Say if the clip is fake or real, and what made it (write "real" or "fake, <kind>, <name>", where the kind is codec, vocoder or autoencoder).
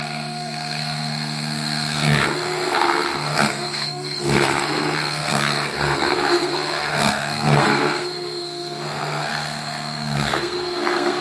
fake, codec, SNAC